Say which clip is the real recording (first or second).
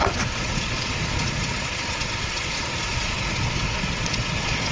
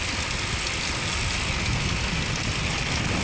second